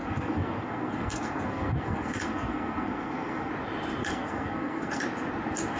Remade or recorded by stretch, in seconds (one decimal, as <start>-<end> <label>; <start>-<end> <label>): 0.0-3.5 remade; 3.5-4.0 recorded; 4.0-5.0 remade; 5.0-5.8 recorded